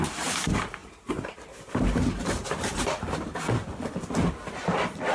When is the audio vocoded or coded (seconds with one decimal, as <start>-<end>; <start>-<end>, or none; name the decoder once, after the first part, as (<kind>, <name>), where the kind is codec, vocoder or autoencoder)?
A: 0.8-3.9 (vocoder, BigVGAN v2)